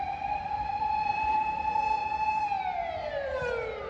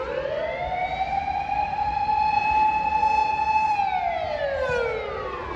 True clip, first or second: second